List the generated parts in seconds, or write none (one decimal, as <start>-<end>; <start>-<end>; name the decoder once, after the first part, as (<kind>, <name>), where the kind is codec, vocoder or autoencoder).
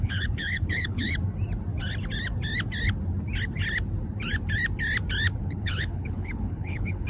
0.0-1.1 (codec, HILCodec); 5.4-7.1